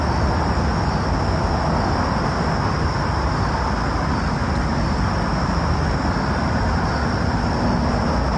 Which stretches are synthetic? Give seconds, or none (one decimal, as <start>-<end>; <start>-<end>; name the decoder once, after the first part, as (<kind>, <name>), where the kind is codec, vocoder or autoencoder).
none